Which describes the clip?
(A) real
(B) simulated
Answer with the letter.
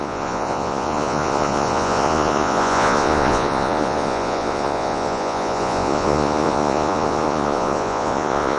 B